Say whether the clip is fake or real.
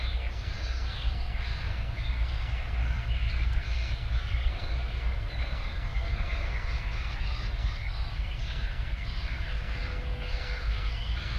fake